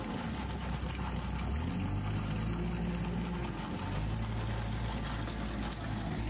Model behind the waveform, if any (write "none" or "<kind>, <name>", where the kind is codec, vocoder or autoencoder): none